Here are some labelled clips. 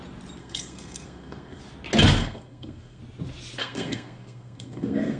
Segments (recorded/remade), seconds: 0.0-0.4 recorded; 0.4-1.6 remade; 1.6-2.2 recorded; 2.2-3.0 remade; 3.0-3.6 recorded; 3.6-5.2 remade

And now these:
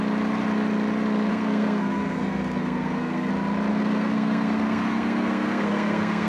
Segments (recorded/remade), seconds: 0.0-1.3 recorded; 1.3-3.3 remade; 3.3-3.7 recorded; 3.7-6.3 remade

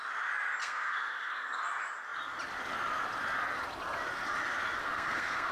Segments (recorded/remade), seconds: 0.0-0.6 recorded; 0.6-1.6 remade; 1.6-4.8 recorded; 4.8-5.5 remade

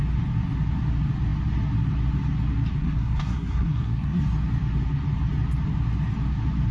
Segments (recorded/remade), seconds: 0.0-2.8 recorded; 2.8-4.2 remade; 4.2-6.7 recorded

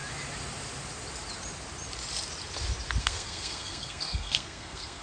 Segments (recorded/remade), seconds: 0.0-3.0 recorded; 3.0-5.0 remade

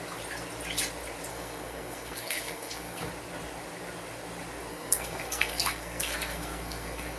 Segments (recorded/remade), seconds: 0.0-1.3 recorded; 1.3-3.1 remade; 3.1-4.7 recorded; 4.7-7.2 remade

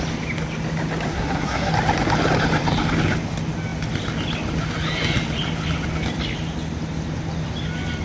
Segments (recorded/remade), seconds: 0.0-1.1 recorded; 1.1-1.7 remade; 1.7-8.0 recorded

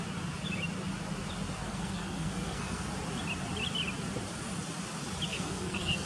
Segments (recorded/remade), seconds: 0.0-1.6 recorded; 1.6-2.9 remade; 2.9-5.3 recorded; 5.3-6.1 remade